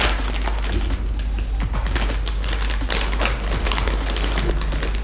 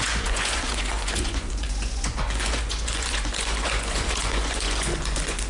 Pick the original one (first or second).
first